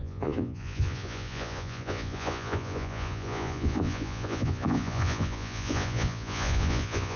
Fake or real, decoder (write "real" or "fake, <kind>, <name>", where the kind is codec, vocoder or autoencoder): fake, vocoder, Vocos